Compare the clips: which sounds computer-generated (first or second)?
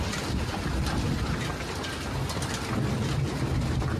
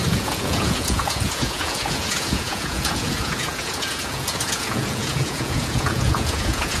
second